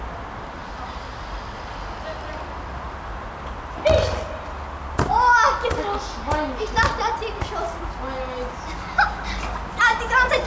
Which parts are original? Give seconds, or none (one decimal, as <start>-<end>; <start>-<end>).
0.0-10.5